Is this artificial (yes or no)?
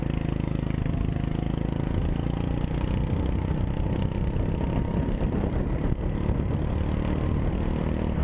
no